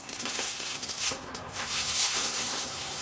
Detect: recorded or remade remade